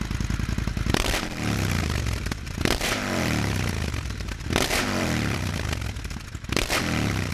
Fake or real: fake